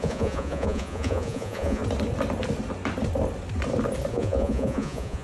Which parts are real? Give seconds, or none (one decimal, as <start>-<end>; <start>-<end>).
1.8-4.1